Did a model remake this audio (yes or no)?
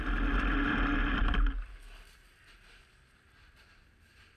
no